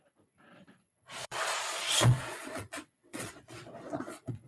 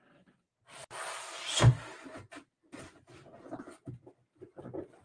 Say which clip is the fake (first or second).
first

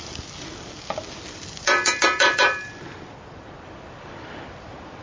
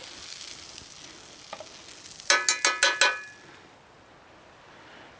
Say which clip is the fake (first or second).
first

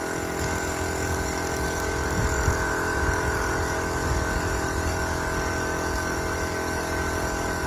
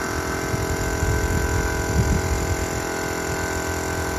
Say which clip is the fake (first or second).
first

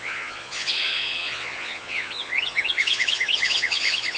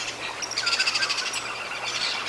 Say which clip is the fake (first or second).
first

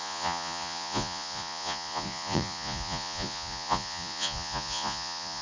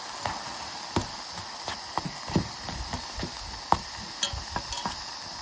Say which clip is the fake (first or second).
first